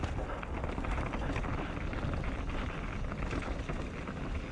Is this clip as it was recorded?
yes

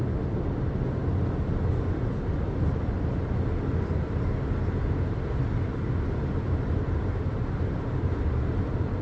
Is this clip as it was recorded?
yes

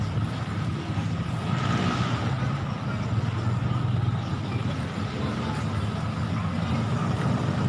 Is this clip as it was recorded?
yes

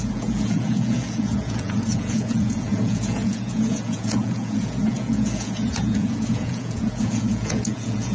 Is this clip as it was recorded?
no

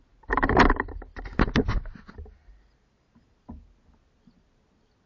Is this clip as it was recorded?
yes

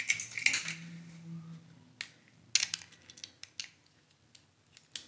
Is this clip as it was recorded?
yes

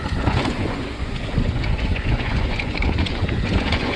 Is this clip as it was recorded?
no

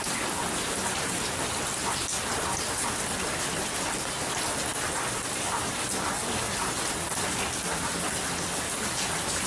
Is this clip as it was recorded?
yes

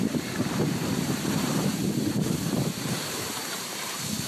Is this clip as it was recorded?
no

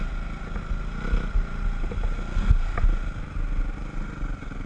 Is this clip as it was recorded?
yes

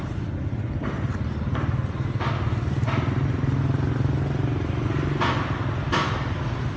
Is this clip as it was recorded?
yes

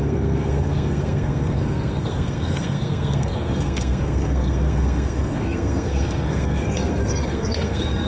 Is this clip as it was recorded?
no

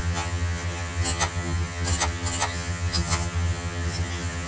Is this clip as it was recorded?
no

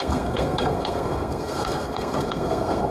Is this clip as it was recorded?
no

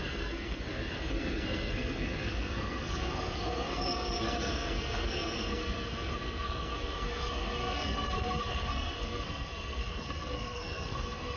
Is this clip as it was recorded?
no